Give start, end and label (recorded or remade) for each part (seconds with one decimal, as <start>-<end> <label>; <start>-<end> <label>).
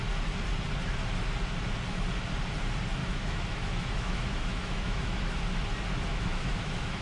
0.0-3.0 recorded; 3.0-5.4 remade; 5.4-6.1 recorded; 6.1-7.0 remade